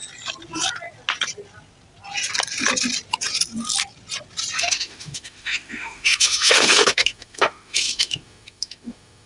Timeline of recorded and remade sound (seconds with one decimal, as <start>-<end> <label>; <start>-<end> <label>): 0.0-4.6 recorded; 4.6-9.3 remade